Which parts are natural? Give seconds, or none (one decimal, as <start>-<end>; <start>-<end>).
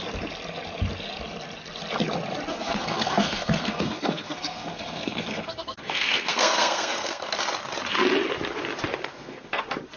0.0-2.5; 7.4-9.1; 9.6-10.0